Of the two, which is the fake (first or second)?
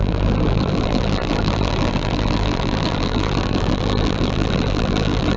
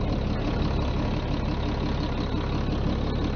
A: first